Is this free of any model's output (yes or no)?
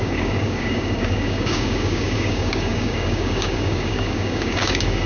no